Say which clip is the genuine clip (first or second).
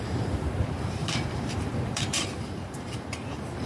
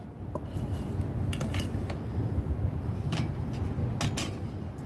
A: second